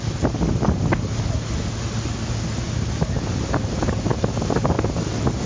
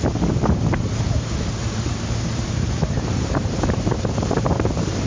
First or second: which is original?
first